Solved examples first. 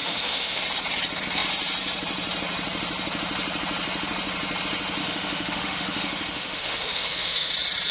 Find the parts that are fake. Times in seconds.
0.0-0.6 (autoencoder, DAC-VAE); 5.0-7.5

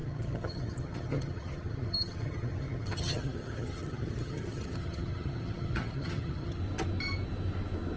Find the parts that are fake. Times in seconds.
0.0-6.6 (vocoder, HiFi-GAN)

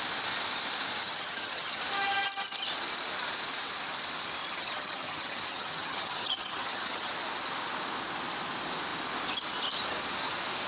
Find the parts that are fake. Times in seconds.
1.0-1.8 (vocoder, HiFi-GAN); 4.4-7.1

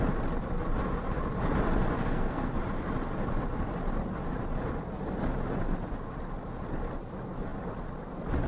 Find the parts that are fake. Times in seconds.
2.0-2.5 (codec, SNAC)